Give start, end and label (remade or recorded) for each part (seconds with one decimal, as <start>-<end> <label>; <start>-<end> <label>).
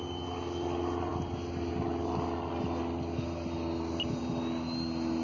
0.0-5.2 recorded